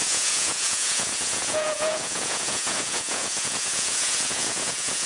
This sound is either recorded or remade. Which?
remade